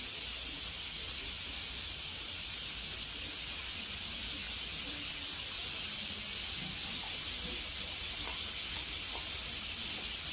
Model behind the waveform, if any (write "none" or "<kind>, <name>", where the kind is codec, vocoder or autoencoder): none